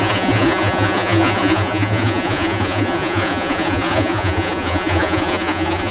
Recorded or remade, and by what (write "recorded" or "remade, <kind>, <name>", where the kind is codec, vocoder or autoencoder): remade, vocoder, Vocos